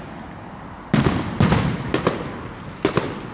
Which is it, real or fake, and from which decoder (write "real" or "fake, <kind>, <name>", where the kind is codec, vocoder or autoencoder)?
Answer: real